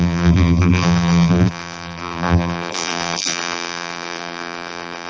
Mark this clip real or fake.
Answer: fake